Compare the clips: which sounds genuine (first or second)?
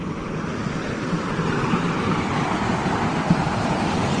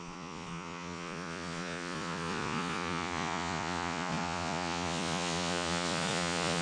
first